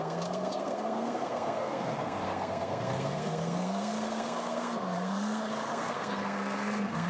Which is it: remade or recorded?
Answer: remade